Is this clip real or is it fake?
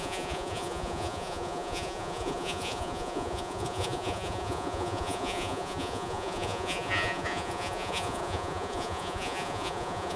fake